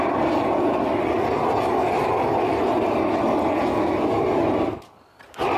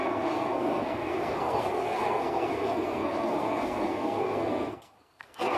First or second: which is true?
first